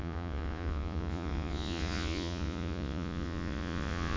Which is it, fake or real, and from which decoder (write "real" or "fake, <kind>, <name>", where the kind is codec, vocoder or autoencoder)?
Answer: fake, vocoder, Vocos